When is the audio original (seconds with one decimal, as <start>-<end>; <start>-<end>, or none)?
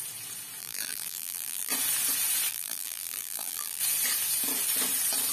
0.0-0.6; 1.7-2.5; 3.8-5.3